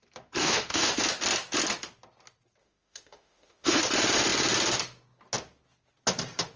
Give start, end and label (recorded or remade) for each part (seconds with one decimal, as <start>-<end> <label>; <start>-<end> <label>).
0.0-0.4 recorded; 0.4-1.0 remade; 1.0-2.6 recorded; 2.6-3.8 remade; 3.8-6.6 recorded